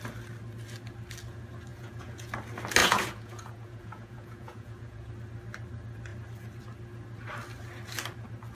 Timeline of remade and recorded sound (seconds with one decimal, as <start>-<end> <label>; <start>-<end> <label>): 0.0-1.7 recorded; 1.7-2.3 remade; 2.3-2.8 recorded; 2.8-5.1 remade; 5.1-8.5 recorded